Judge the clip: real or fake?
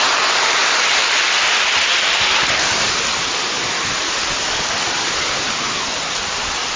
real